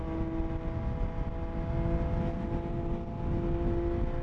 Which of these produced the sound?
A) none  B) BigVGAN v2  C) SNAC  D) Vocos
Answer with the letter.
A